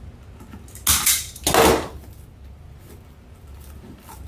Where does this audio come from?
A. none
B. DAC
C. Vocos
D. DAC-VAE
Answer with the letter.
A